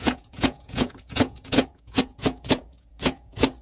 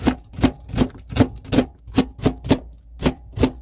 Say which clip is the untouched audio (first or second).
second